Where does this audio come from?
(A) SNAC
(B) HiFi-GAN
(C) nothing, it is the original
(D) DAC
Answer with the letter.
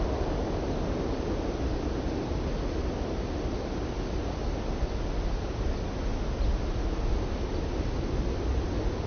C